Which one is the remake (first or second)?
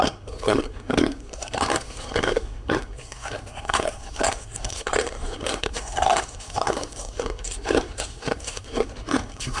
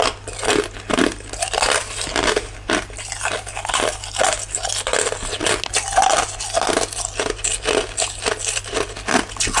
first